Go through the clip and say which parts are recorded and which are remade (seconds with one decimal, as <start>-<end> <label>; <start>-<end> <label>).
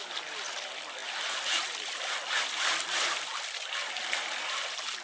0.0-5.0 recorded